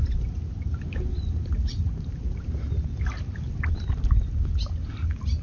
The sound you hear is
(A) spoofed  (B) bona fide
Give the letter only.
B